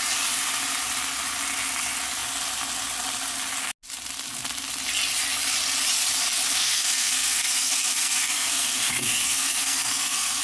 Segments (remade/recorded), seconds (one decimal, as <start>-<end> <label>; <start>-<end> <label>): 0.0-6.5 recorded; 6.5-10.4 remade